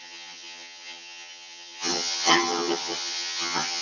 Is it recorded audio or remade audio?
remade